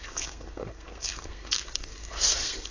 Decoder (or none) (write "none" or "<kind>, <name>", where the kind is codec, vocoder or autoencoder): codec, SNAC